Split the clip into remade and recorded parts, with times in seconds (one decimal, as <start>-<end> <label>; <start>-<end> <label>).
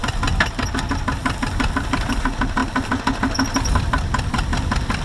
0.0-5.0 recorded